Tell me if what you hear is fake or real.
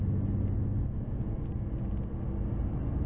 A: real